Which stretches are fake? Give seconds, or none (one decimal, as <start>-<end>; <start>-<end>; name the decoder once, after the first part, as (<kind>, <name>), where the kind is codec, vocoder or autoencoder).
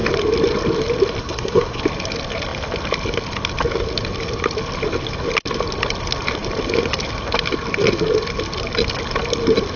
1.2-1.8 (codec, SNAC)